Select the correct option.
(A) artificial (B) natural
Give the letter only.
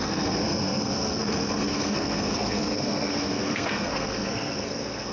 A